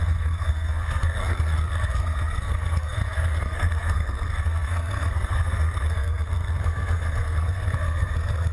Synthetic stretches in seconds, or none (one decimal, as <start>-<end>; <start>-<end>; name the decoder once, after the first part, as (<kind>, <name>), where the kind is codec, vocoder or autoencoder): 0.0-8.5 (codec, SNAC)